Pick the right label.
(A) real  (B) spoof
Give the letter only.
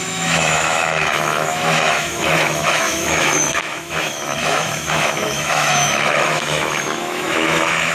B